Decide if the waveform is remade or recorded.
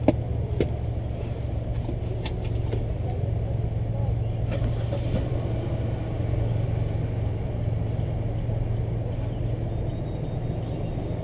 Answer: recorded